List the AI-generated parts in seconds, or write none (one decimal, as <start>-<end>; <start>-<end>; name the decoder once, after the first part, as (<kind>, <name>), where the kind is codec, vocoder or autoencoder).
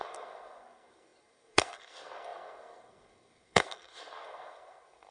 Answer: 0.0-5.1 (codec, SNAC)